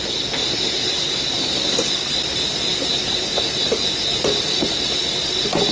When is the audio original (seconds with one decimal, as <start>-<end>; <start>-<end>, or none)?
0.0-5.7